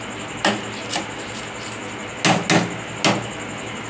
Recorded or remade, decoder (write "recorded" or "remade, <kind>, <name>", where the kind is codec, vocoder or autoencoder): recorded